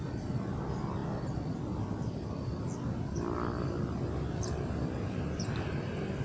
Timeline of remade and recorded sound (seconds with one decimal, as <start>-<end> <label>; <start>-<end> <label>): 0.0-6.2 recorded